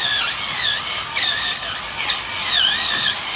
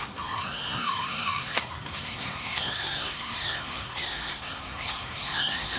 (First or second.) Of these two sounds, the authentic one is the first